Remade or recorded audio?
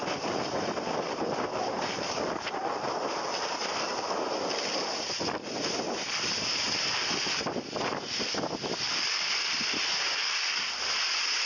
recorded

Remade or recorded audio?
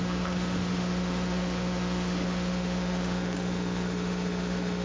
remade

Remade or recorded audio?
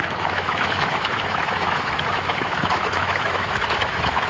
remade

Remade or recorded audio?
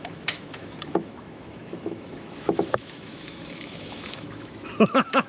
remade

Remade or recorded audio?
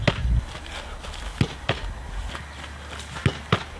recorded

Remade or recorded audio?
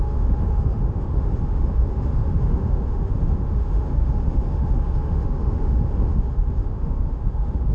remade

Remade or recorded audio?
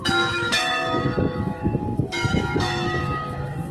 remade